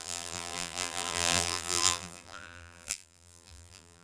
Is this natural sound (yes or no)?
no